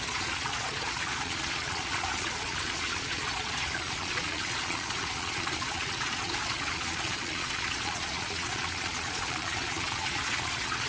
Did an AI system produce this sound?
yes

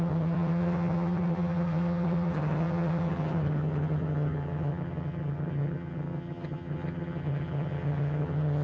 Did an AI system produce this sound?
yes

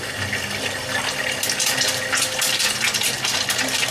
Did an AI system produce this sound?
no